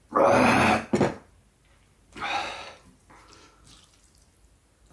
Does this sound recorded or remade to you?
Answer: recorded